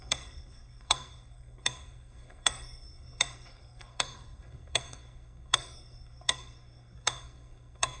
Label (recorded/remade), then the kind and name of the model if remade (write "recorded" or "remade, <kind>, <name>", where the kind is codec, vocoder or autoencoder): remade, codec, SNAC